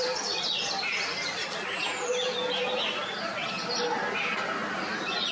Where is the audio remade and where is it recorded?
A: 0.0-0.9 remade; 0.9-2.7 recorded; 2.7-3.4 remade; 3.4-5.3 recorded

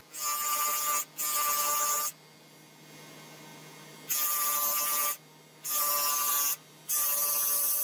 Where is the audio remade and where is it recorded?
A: 0.0-7.8 recorded

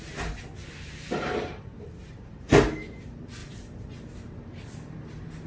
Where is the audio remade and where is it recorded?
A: 0.0-0.6 remade; 0.6-1.2 recorded; 1.2-5.5 remade

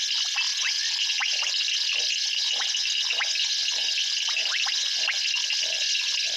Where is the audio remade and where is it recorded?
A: 0.0-0.5 recorded; 0.5-2.0 remade; 2.0-6.4 recorded

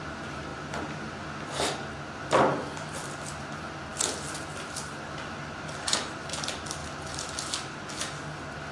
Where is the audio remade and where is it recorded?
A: 0.0-8.7 recorded

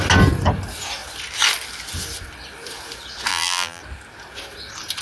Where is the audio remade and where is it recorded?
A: 0.0-3.3 recorded; 3.3-3.8 remade; 3.8-5.0 recorded

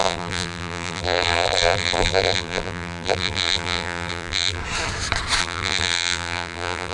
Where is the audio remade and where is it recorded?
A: 0.0-4.6 remade; 4.6-5.4 recorded; 5.4-6.9 remade

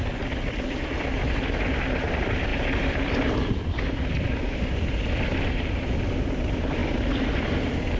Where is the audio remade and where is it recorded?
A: 0.0-2.5 recorded; 2.5-3.5 remade; 3.5-6.8 recorded; 6.8-8.0 remade